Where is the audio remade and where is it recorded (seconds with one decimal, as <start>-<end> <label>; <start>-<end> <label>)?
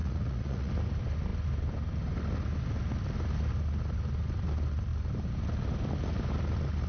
0.0-0.7 remade; 0.7-6.9 recorded